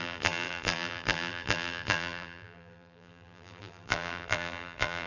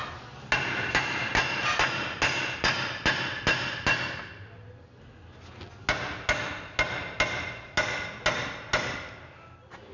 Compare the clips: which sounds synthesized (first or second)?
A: first